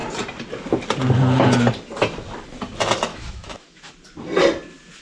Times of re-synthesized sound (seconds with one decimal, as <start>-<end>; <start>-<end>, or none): 3.1-3.9